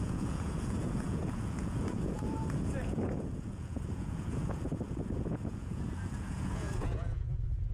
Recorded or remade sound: remade